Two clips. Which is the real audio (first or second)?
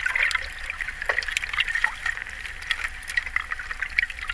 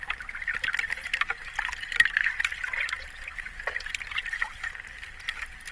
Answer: first